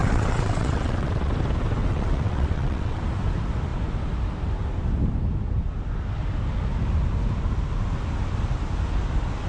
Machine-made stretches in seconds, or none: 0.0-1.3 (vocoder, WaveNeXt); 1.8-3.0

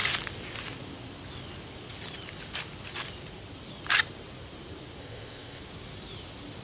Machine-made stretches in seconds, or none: 5.0-5.6 (codec, ZipCodec)

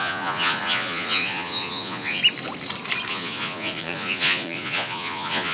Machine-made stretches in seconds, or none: 0.0-2.2 (vocoder, Vocos); 3.1-5.5

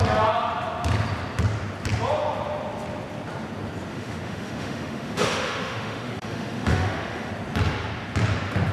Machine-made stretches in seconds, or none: 3.9-7.3 (autoencoder, DAC-VAE)

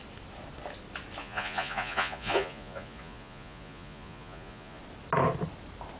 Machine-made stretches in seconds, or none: 1.2-4.8 (vocoder, Vocos)

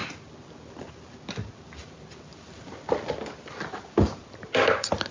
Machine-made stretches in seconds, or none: none

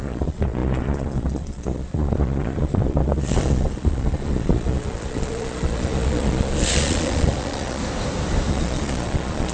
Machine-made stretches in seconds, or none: 0.0-7.8 (vocoder, Vocos); 8.5-9.5